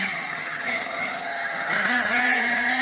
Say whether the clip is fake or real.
fake